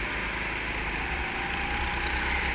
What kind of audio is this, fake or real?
real